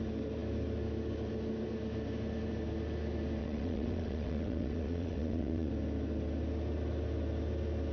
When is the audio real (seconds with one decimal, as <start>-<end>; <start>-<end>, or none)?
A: 0.0-3.4; 5.7-7.9

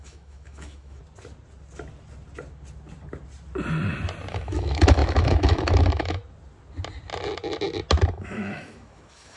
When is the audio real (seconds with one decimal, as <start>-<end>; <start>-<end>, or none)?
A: 1.0-4.3; 6.2-8.1

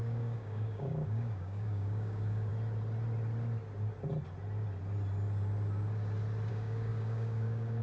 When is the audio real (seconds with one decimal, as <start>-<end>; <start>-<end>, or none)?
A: 2.5-6.5

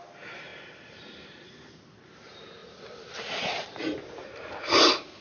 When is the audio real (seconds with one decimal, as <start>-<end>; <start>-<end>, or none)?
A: 0.0-0.5; 1.7-2.6; 4.4-5.2

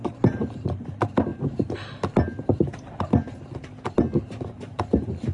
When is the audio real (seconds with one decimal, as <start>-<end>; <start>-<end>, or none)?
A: 1.3-4.5

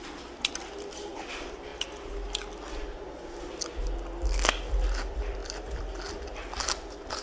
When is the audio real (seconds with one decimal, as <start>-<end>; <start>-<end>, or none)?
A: 1.7-5.0

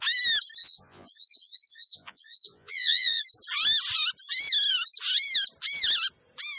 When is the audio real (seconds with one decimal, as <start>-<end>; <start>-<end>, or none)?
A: 0.0-0.6; 3.2-6.6